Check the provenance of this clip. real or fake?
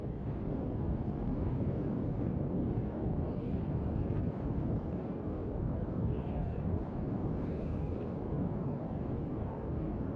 fake